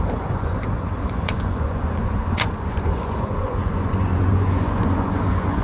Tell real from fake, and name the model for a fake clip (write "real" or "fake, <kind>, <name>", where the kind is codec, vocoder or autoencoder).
fake, vocoder, Vocos